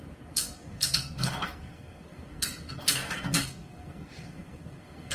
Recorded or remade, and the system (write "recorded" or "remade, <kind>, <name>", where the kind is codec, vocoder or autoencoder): remade, codec, SNAC